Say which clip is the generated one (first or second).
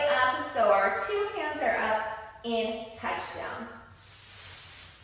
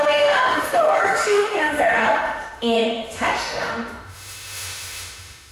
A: second